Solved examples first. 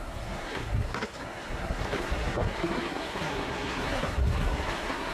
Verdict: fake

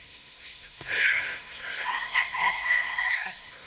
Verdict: fake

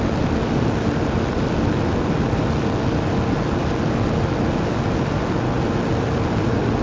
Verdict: real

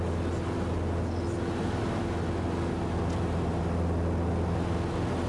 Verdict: real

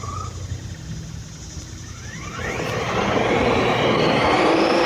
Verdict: real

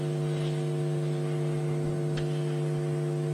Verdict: real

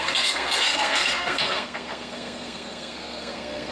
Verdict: fake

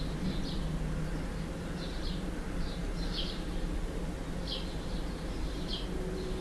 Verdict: real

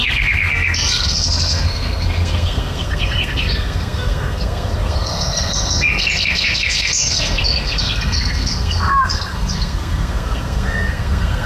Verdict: fake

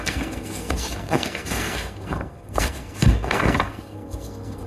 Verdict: fake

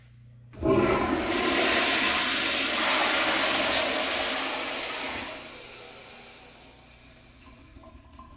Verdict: real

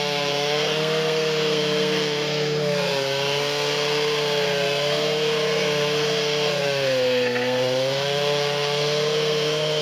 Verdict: fake